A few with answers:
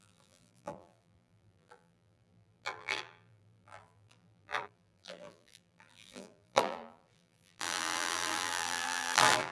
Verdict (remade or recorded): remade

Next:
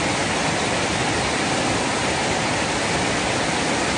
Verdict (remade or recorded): recorded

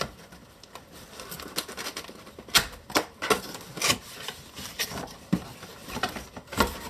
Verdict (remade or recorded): recorded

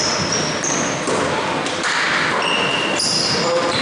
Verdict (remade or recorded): recorded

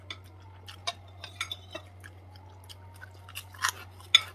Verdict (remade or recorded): recorded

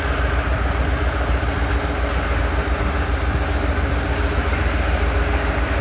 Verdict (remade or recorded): recorded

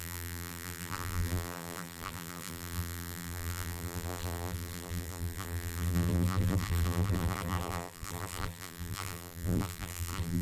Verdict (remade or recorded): remade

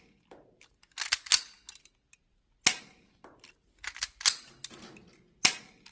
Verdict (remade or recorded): recorded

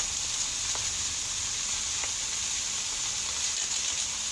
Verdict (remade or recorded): remade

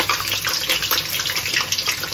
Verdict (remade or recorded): recorded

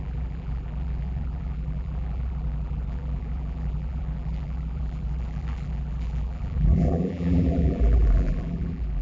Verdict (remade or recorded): remade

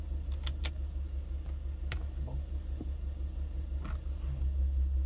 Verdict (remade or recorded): recorded